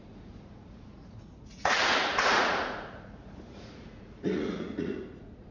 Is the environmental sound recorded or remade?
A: remade